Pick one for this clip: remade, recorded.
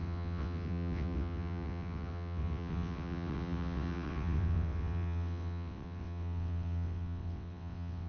remade